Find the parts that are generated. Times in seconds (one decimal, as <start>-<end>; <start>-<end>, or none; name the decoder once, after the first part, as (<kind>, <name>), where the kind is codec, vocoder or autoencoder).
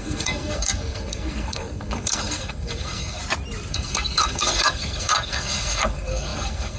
0.0-3.2 (codec, SNAC); 3.7-6.8